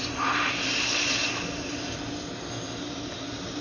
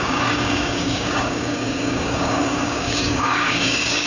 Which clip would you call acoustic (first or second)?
first